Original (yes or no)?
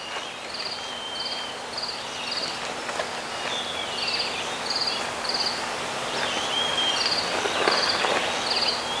yes